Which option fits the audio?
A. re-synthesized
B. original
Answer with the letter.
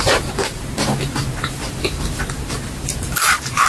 B